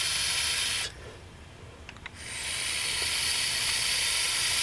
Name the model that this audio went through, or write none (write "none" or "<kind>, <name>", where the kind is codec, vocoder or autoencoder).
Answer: none